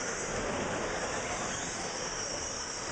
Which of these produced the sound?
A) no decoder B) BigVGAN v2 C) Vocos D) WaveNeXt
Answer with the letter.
A